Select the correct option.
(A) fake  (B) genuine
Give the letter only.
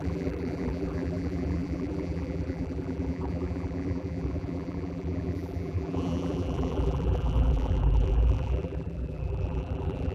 A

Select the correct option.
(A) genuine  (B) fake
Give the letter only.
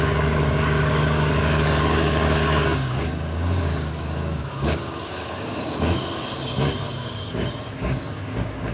B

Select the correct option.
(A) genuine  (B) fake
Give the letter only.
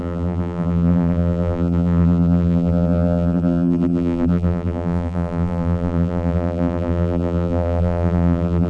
B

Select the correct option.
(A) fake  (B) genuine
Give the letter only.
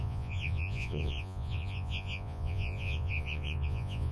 A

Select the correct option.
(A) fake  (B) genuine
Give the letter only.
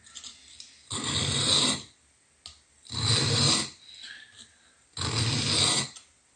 B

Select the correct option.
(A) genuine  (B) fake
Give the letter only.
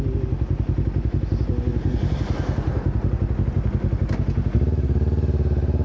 A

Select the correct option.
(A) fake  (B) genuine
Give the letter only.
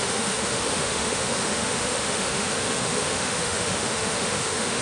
A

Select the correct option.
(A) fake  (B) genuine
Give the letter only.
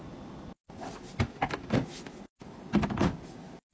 B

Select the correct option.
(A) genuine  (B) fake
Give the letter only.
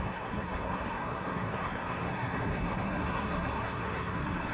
B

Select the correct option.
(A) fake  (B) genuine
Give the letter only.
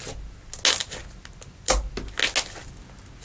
B